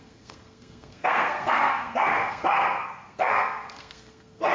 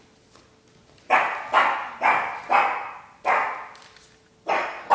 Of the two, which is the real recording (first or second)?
second